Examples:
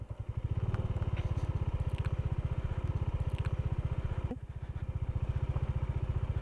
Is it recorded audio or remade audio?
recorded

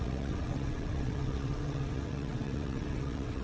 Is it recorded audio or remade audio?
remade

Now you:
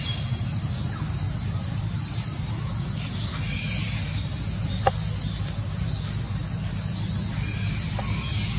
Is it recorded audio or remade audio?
recorded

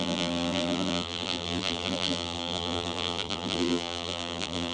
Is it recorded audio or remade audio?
remade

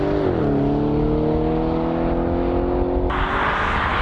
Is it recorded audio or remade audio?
recorded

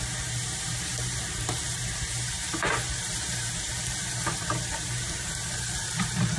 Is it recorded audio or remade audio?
remade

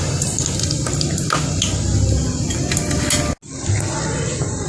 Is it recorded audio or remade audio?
recorded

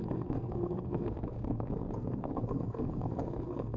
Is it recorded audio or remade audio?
remade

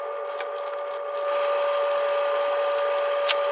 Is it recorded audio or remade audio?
recorded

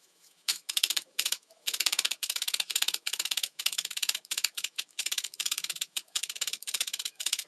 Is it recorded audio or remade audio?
remade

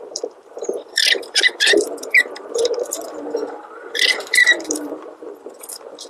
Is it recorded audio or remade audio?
remade